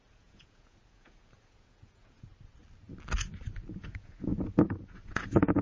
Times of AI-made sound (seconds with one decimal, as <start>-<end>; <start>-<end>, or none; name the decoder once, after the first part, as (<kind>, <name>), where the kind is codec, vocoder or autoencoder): 0.0-2.3 (vocoder, Vocos); 3.8-5.6